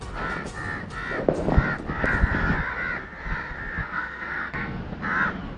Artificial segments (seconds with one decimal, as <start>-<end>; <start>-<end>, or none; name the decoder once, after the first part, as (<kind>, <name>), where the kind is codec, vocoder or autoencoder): 3.8-4.8 (codec, SNAC)